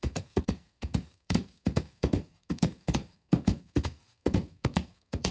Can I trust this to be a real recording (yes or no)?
no